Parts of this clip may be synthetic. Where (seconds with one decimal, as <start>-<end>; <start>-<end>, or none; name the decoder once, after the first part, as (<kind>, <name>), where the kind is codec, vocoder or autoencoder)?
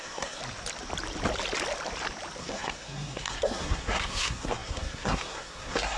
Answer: 0.0-0.4 (codec, SNAC); 2.4-6.0